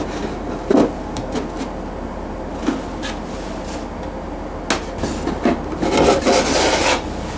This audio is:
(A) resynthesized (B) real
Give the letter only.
B